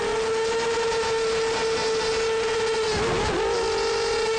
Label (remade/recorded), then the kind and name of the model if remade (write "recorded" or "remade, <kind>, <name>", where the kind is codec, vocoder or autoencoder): recorded